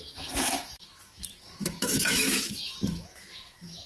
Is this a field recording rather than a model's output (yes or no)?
no